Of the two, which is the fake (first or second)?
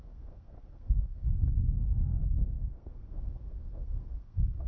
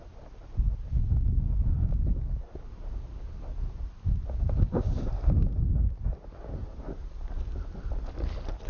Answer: first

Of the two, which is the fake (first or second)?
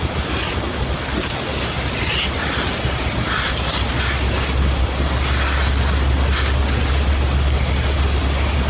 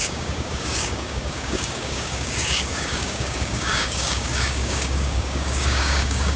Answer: second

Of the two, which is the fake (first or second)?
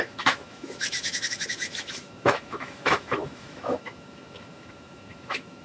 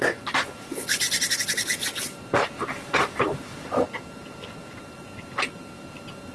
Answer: first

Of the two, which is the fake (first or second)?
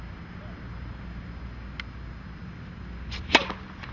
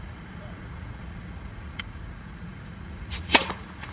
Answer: second